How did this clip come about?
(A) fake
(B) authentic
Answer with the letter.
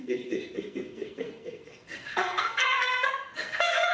A